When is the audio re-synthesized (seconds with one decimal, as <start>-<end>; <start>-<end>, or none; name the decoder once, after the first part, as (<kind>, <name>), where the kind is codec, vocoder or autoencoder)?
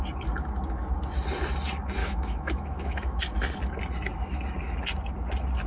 2.0-3.2 (autoencoder, DAC-VAE)